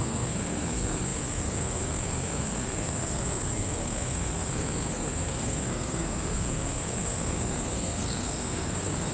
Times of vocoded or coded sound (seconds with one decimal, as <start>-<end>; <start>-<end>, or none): 0.0-9.1